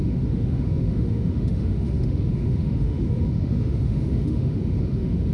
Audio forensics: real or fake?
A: fake